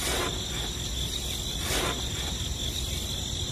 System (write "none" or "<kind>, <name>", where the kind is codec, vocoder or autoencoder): none